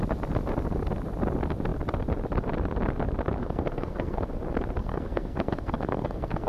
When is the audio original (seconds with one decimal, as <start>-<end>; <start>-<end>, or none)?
0.0-3.4; 4.3-4.8